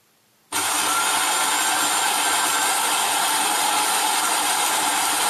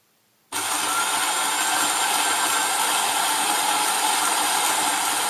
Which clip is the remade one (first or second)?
second